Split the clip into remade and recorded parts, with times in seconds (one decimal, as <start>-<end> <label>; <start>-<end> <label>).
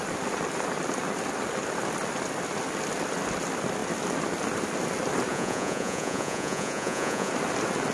0.0-5.3 recorded; 5.3-7.3 remade; 7.3-7.9 recorded